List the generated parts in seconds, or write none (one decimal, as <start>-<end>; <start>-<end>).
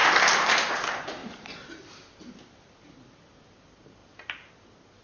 1.2-2.7; 4.0-4.5